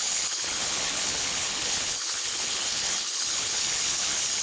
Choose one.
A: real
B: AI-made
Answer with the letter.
B